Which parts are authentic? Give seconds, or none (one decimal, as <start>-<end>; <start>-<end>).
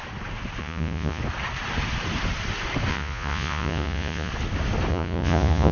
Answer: 0.0-0.6; 1.2-2.9; 4.3-4.9